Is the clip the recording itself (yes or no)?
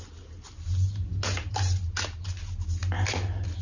yes